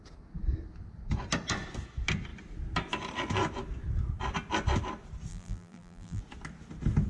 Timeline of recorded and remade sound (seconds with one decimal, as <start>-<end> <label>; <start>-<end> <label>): 0.0-5.3 recorded; 5.3-6.2 remade; 6.2-7.1 recorded